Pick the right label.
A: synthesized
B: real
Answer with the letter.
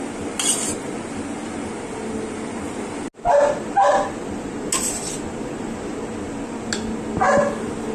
B